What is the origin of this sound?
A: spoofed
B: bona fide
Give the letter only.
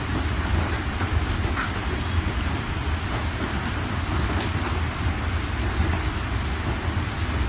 B